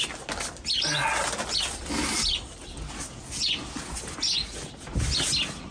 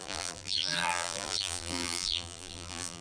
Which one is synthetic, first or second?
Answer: second